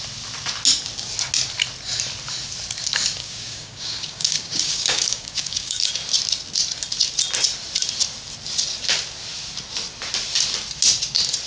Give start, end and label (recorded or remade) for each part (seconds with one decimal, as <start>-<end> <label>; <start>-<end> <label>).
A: 0.0-3.2 recorded; 3.2-5.9 remade; 5.9-11.5 recorded